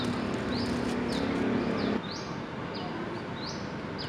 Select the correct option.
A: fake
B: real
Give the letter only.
B